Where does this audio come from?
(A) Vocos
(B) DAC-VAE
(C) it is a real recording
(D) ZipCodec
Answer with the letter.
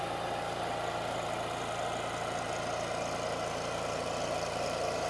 C